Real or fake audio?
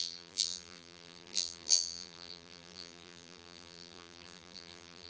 fake